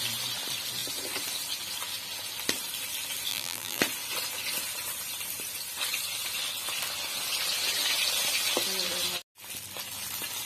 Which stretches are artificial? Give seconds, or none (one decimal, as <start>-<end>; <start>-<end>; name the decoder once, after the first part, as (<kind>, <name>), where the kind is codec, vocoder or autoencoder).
3.3-3.8 (vocoder, BigVGAN v2)